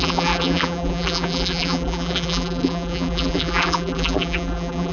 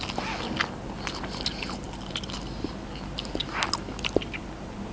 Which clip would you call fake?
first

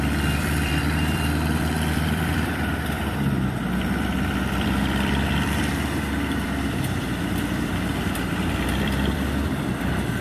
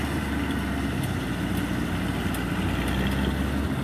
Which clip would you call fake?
first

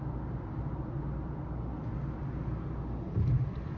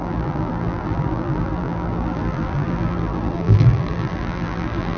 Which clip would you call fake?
second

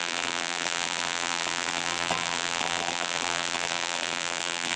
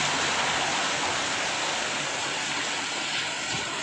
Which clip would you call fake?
first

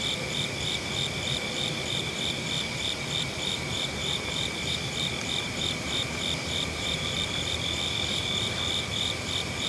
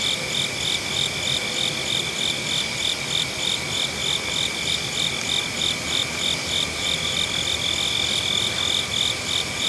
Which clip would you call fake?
first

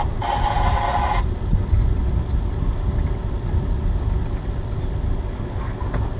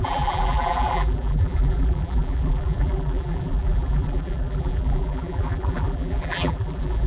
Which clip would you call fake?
second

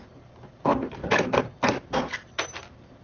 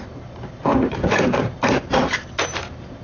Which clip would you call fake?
second